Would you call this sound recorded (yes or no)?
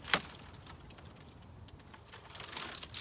yes